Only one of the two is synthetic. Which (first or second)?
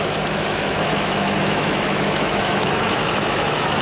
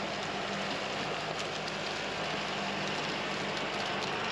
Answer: first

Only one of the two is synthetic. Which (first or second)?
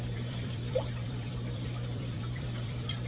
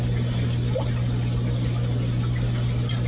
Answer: first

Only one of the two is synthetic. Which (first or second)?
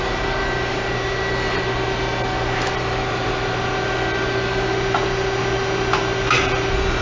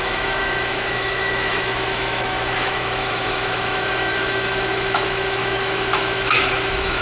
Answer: second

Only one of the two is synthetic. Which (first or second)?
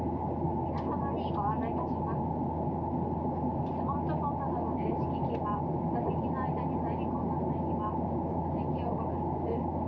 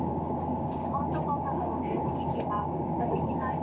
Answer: second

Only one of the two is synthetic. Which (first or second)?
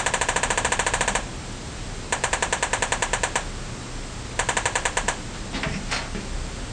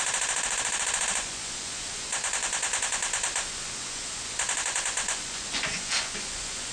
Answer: second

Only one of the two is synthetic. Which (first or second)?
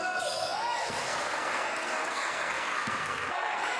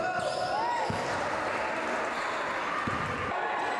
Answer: first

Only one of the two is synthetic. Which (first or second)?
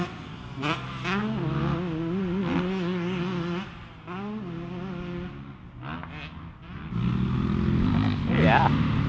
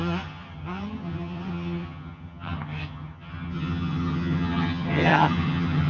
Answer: second